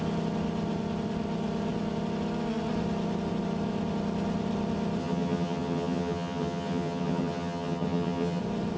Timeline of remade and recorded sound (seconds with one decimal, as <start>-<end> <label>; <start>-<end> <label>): 0.0-5.0 recorded; 5.0-8.4 remade; 8.4-8.8 recorded